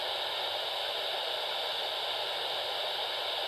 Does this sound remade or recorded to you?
recorded